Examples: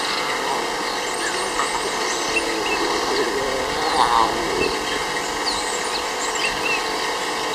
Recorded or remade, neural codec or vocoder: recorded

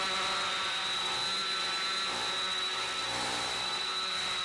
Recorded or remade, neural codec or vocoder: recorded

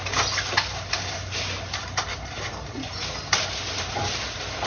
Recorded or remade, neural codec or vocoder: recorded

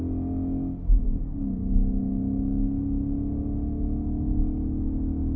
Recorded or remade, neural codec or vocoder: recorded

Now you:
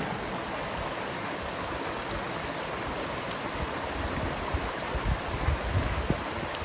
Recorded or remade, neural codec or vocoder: recorded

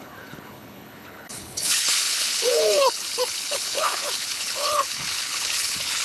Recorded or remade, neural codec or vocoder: remade, codec, HILCodec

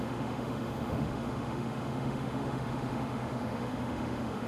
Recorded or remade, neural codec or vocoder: remade, autoencoder, DAC-VAE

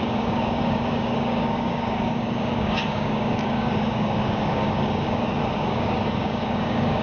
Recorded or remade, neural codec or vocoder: remade, codec, DAC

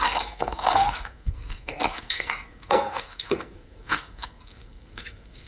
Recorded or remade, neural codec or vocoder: remade, codec, SNAC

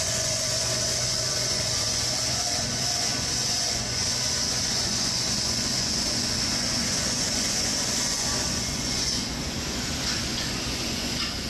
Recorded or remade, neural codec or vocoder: remade, vocoder, Vocos